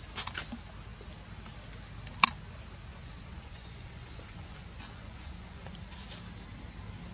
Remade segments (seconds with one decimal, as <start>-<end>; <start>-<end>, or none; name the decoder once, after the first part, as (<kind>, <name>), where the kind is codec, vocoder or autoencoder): 2.9-5.7 (vocoder, Vocos)